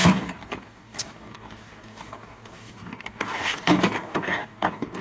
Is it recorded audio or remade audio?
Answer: remade